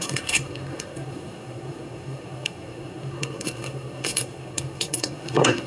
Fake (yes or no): yes